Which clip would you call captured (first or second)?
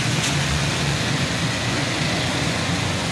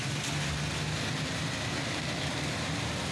second